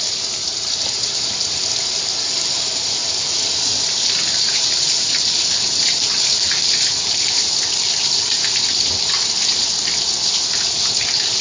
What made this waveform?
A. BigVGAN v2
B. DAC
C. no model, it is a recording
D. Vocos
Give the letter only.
A